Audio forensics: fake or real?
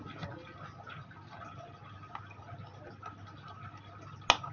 real